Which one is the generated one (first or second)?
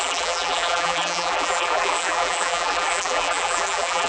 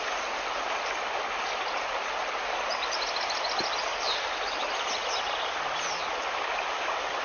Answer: first